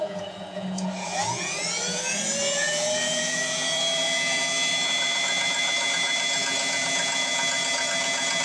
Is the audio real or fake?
fake